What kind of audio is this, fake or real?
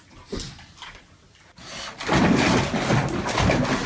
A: real